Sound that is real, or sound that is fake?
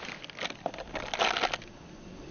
real